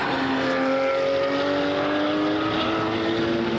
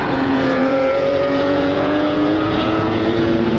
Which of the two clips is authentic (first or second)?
first